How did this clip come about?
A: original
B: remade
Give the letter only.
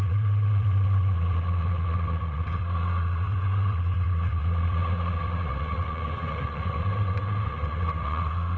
B